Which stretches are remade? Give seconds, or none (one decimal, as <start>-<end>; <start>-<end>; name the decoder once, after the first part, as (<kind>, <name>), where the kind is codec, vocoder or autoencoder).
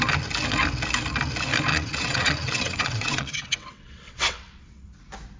1.7-4.9 (vocoder, WaveNeXt)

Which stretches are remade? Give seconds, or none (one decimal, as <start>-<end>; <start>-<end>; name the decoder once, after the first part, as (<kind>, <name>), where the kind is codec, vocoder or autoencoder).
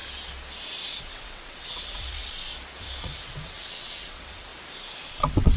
1.0-2.5 (vocoder, WaveNeXt); 3.0-4.5; 5.1-5.6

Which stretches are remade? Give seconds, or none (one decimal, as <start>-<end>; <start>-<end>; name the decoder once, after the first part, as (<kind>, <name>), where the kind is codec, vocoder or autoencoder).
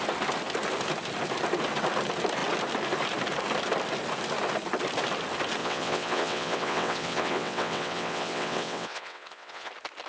5.6-9.7 (vocoder, WaveNeXt)